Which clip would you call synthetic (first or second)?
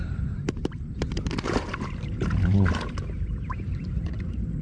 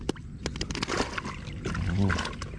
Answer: first